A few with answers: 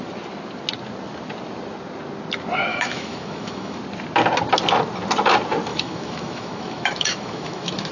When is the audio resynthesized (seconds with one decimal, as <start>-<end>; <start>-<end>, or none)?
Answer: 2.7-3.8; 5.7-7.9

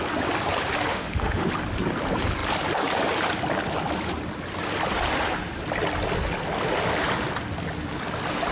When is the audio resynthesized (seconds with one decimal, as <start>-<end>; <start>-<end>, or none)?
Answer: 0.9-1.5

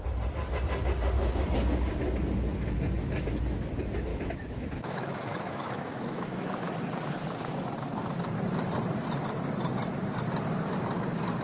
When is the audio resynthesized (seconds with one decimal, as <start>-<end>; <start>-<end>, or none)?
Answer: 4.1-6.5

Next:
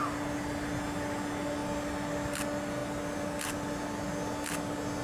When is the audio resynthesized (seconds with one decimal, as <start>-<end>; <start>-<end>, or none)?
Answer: none

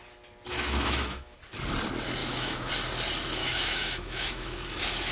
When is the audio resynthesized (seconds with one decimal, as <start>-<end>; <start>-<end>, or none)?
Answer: 0.5-1.4; 2.2-2.7; 3.4-5.1

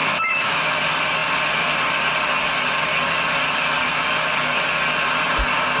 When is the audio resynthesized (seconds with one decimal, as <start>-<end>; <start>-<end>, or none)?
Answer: 0.0-0.6

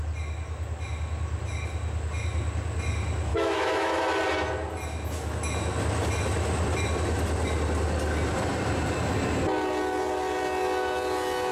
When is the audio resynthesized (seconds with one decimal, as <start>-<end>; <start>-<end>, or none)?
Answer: 3.3-4.0

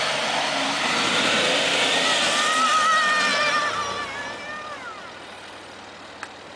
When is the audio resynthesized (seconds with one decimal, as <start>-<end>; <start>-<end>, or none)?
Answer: none